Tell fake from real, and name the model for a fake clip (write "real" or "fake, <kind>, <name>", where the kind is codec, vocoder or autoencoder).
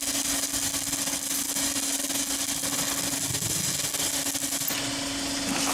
real